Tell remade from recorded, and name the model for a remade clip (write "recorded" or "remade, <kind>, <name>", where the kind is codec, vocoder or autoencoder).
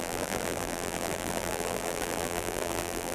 remade, vocoder, BigVGAN v2